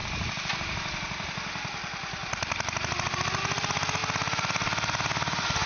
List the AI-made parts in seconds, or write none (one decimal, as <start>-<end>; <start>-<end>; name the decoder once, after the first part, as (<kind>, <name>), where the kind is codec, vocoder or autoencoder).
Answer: 0.0-3.4 (vocoder, BigVGAN v2)